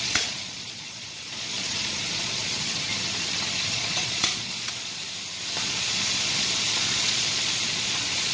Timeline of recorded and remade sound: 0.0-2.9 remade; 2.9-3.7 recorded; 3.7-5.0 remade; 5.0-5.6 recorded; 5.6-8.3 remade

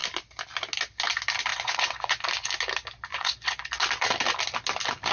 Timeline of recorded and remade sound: 0.0-1.5 recorded; 1.5-2.2 remade; 2.2-3.1 recorded; 3.1-3.7 remade; 3.7-5.1 recorded

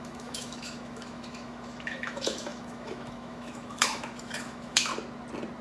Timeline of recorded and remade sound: 0.0-4.9 remade; 4.9-5.6 recorded

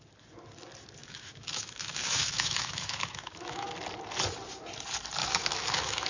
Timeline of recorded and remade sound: 0.0-1.0 recorded; 1.0-3.7 remade; 3.7-5.2 recorded; 5.2-6.1 remade

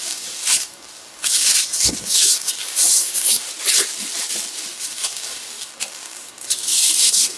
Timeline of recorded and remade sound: 0.0-3.5 remade; 3.5-4.7 recorded; 4.7-7.4 remade

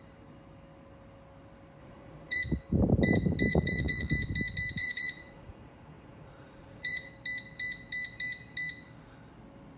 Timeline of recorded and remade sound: 0.0-1.8 recorded; 1.8-2.4 remade; 2.4-3.5 recorded; 3.5-4.1 remade; 4.1-4.8 recorded; 4.8-7.1 remade; 7.1-9.8 recorded

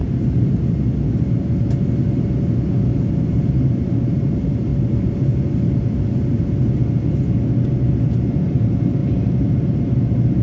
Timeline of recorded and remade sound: 0.0-3.1 recorded; 3.1-4.7 remade; 4.7-8.1 recorded; 8.1-10.4 remade

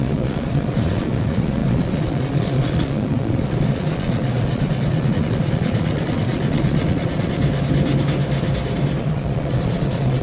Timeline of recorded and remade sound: 0.0-7.4 remade; 7.4-9.0 recorded; 9.0-10.2 remade